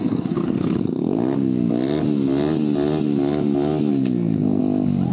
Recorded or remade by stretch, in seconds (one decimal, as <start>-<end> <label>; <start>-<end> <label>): 0.0-1.2 remade; 1.2-3.9 recorded; 3.9-4.6 remade; 4.6-5.1 recorded